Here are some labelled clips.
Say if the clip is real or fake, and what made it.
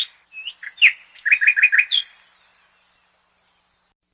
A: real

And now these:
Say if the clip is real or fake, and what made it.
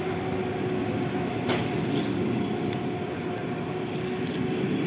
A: real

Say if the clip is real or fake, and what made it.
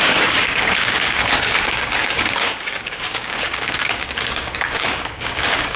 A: fake, codec, DAC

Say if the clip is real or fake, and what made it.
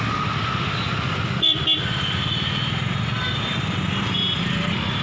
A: real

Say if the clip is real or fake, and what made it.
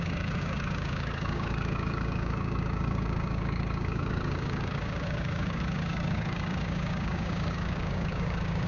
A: fake, codec, DAC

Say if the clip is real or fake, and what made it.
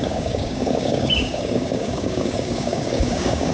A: fake, codec, DAC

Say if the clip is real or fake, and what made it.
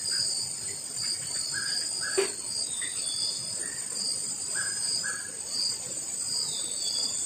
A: real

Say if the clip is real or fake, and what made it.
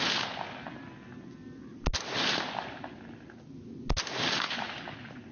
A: real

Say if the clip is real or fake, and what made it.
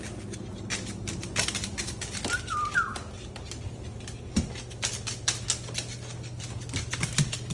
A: real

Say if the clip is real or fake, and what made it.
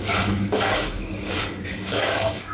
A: fake, codec, DAC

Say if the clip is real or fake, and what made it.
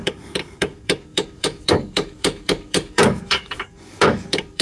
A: fake, codec, DAC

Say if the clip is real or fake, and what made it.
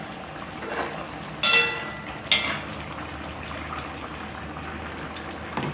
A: real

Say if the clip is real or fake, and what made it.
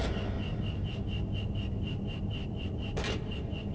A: real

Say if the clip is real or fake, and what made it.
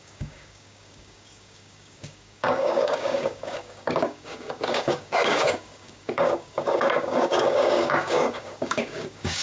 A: fake, codec, DAC